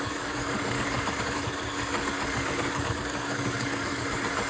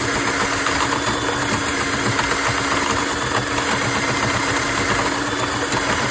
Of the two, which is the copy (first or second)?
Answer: first